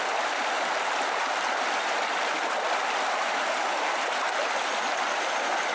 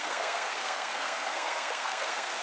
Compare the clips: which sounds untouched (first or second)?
first